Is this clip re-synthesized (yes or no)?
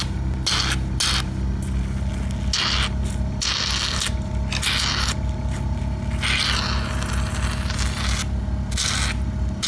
no